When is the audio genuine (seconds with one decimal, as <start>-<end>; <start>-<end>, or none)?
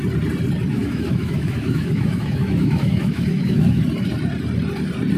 0.0-0.7; 3.8-5.2